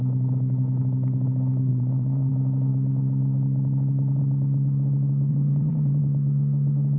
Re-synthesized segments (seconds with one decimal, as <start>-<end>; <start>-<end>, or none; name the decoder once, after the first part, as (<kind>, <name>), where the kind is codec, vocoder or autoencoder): 1.7-2.3 (vocoder, Vocos); 5.3-6.0